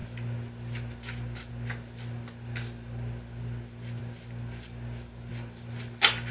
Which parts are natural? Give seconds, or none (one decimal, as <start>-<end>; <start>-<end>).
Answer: 0.0-6.3

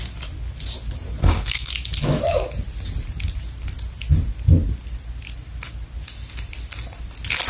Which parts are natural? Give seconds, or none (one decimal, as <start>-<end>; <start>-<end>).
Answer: 0.0-1.2; 1.7-7.5

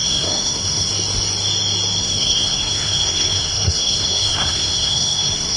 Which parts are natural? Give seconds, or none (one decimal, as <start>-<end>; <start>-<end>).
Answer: 0.9-2.0

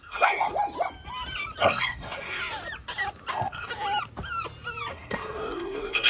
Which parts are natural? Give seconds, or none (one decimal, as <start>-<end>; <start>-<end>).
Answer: 0.5-1.6; 2.4-3.3; 3.7-4.9

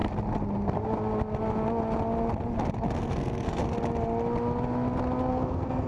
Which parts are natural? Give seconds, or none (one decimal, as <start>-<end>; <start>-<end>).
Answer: 0.0-3.0; 3.6-5.3

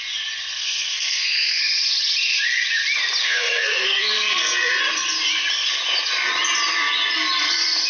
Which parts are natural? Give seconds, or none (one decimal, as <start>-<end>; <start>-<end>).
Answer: 0.0-0.5; 1.6-3.2; 4.8-7.9

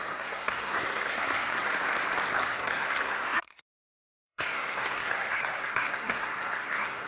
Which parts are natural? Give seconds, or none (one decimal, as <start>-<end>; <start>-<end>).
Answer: 1.7-2.4

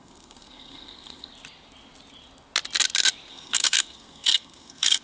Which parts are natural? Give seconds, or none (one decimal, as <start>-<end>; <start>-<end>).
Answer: 1.3-3.3